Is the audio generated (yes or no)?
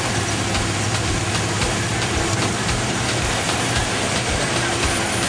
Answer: yes